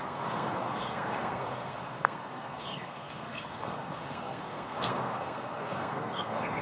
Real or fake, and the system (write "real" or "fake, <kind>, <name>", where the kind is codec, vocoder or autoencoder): fake, codec, SNAC